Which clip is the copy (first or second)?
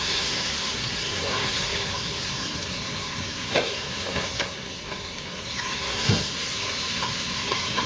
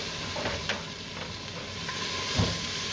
first